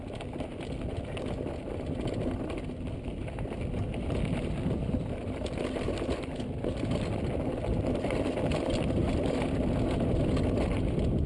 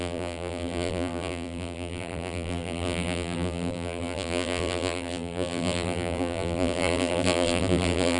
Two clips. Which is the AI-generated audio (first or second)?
second